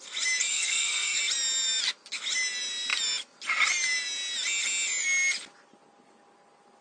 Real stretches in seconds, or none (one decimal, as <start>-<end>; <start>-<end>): 0.0-0.5; 1.2-6.8